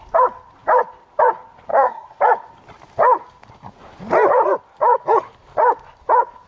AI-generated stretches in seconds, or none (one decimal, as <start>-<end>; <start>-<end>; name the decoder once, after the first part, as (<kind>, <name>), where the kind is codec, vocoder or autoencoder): 1.7-2.2 (codec, SNAC)